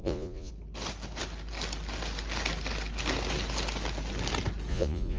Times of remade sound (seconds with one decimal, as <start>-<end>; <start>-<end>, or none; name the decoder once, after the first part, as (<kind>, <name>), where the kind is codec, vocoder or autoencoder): 0.0-0.5 (vocoder, Vocos); 4.7-5.2